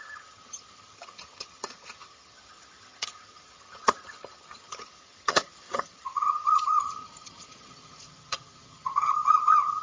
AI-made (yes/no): yes